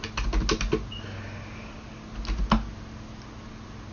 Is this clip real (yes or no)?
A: yes